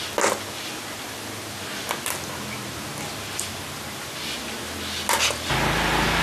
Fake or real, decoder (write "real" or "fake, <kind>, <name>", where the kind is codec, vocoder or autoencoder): real